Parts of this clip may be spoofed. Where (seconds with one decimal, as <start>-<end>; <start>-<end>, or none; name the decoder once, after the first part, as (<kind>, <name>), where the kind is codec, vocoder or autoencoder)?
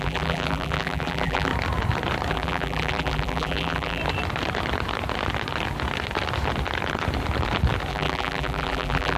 0.0-1.5 (vocoder, BigVGAN v2); 2.3-4.0; 7.9-9.2